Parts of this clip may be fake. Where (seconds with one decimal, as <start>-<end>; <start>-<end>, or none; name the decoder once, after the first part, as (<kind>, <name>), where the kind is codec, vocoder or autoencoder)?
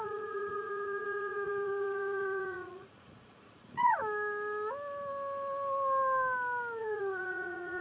0.0-4.0 (vocoder, Vocos); 6.8-7.8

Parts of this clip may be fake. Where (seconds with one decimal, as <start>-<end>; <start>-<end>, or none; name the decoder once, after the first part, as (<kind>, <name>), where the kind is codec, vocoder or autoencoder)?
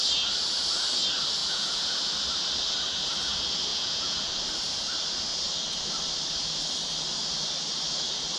1.4-2.0 (vocoder, Vocos); 3.7-4.3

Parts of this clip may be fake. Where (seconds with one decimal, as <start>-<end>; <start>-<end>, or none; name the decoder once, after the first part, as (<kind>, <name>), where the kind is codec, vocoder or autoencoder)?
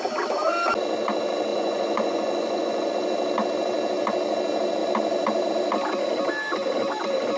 1.5-2.9 (vocoder, Vocos)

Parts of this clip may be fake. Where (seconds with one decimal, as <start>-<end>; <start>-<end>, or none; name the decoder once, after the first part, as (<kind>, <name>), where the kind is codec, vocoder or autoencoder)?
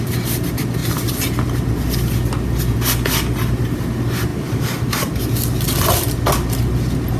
none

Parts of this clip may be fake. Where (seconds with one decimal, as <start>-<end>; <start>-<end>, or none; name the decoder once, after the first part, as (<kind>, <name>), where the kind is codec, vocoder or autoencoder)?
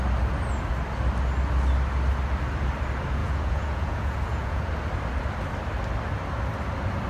3.2-4.7 (vocoder, Vocos)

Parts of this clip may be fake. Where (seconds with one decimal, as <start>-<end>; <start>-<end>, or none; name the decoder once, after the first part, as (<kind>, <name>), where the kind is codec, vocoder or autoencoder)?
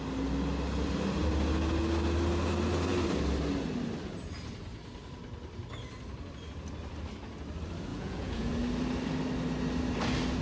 7.9-8.5 (vocoder, Vocos)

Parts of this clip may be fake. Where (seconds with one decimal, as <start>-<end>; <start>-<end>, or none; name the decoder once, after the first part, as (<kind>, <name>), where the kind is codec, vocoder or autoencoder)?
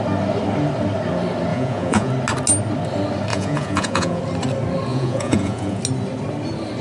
1.5-2.1 (vocoder, Vocos); 3.3-4.2; 4.9-5.8